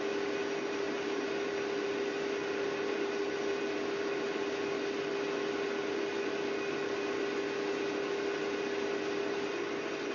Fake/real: real